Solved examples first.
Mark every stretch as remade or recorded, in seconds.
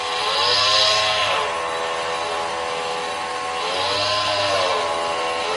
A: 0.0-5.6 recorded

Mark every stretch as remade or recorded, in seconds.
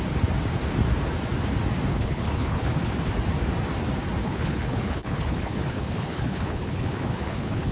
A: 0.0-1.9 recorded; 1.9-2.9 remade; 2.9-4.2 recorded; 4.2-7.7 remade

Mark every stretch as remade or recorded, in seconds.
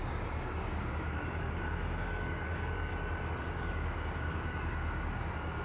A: 0.0-2.9 remade; 2.9-3.4 recorded; 3.4-5.6 remade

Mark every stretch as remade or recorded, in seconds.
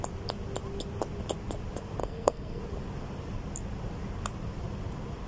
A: 0.0-2.0 recorded; 2.0-2.6 remade; 2.6-5.3 recorded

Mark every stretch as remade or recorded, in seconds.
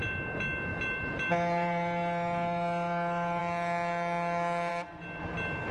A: 0.0-0.7 recorded; 0.7-3.4 remade; 3.4-5.7 recorded